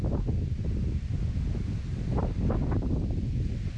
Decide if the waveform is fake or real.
real